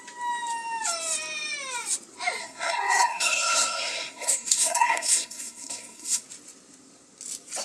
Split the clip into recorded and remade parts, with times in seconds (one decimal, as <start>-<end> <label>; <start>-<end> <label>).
0.0-2.4 recorded; 2.4-6.2 remade; 6.2-7.6 recorded